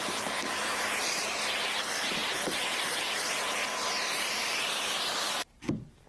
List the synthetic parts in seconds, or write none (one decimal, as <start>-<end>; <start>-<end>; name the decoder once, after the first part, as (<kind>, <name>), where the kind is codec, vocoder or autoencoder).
0.0-3.6 (vocoder, BigVGAN v2); 4.1-6.1